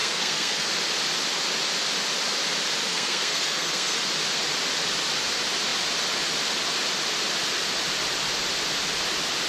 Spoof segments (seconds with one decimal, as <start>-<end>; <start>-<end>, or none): 0.0-0.7; 2.9-4.0